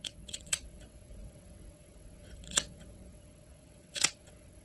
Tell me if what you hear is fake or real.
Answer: fake